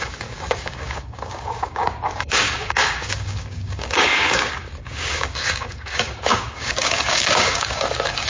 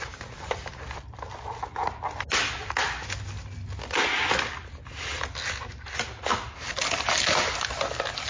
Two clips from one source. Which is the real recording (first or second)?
second